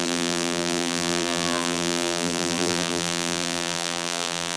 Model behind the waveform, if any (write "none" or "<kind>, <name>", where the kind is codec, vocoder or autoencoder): vocoder, BigVGAN v2